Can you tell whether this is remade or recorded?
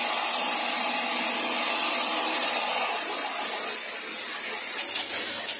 recorded